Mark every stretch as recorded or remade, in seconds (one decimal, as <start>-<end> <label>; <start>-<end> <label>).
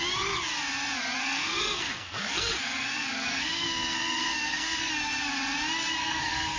0.0-1.2 recorded; 1.2-4.9 remade; 4.9-6.0 recorded; 6.0-6.6 remade